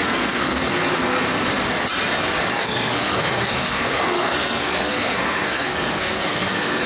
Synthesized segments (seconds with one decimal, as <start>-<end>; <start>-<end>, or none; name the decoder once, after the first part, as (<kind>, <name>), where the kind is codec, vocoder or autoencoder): 0.0-0.9 (codec, SNAC); 2.5-6.9